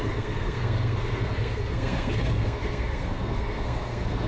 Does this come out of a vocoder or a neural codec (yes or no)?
yes